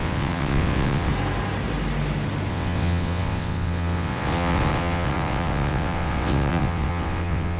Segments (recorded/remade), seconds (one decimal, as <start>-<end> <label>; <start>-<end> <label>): 0.0-1.1 remade; 1.1-2.5 recorded; 2.5-7.6 remade